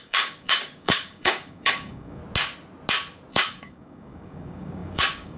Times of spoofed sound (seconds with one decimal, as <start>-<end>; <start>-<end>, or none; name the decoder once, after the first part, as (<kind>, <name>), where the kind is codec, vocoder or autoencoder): 0.0-2.2 (codec, DAC); 3.3-5.4